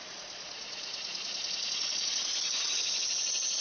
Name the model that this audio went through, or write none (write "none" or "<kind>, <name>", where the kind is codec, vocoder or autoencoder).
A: vocoder, Vocos